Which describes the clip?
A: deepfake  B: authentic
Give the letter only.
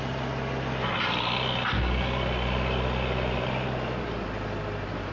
B